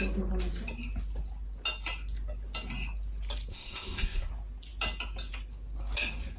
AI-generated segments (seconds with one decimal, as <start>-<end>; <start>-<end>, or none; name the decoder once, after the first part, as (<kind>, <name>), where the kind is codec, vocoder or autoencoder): 3.5-4.3 (codec, ZipCodec)